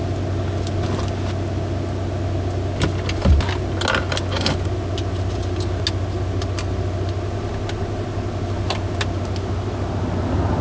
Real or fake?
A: real